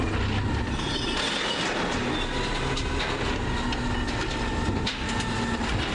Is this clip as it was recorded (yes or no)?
yes